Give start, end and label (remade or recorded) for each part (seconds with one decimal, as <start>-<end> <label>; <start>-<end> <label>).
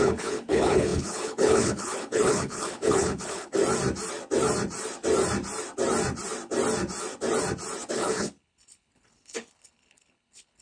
0.0-3.6 remade; 3.6-7.9 recorded; 7.9-10.6 remade